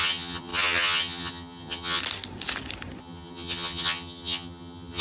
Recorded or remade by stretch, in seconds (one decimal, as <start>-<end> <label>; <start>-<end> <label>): 0.0-2.0 remade; 2.0-3.0 recorded; 3.0-5.0 remade